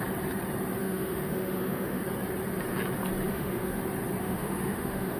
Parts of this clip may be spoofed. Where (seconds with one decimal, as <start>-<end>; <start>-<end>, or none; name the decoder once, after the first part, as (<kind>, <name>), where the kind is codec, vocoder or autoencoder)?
0.8-2.0 (autoencoder, DAC-VAE); 3.3-3.8; 4.2-5.2